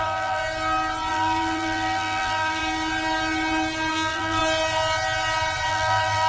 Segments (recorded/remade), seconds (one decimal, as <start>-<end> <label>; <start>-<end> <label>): 0.0-0.4 remade; 0.4-1.1 recorded; 1.1-2.6 remade; 2.6-3.9 recorded; 3.9-4.4 remade; 4.4-5.7 recorded; 5.7-6.3 remade